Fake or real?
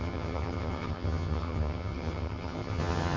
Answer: fake